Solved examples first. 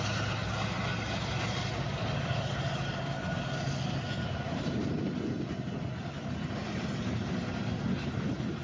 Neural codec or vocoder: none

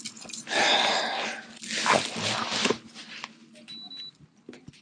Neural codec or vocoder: none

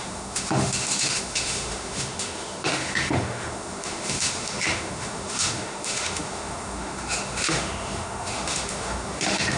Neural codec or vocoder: autoencoder, DAC-VAE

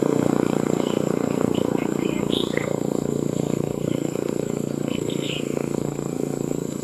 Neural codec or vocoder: codec, SNAC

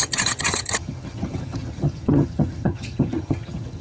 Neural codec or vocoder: vocoder, HiFi-GAN